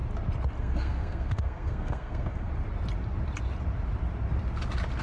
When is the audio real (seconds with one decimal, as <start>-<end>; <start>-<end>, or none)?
0.0-0.6; 2.5-5.0